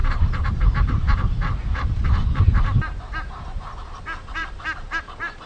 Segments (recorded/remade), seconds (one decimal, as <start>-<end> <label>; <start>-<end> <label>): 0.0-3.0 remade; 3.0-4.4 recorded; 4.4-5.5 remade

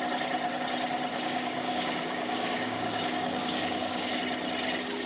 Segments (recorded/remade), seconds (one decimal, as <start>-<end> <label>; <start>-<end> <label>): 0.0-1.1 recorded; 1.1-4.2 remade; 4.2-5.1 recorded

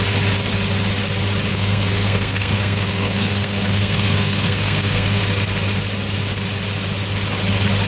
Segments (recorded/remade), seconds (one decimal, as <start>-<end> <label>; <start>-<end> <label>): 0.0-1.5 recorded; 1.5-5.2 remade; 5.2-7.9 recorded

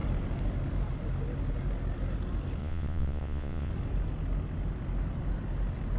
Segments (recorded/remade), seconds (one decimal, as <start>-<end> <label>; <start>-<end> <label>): 0.0-2.6 recorded; 2.6-3.7 remade; 3.7-6.0 recorded

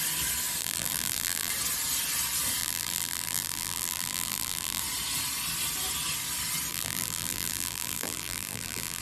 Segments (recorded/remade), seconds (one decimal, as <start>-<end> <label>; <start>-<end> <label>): 0.0-0.6 recorded; 0.6-1.5 remade; 1.5-2.6 recorded; 2.6-4.8 remade; 4.8-6.7 recorded; 6.7-9.0 remade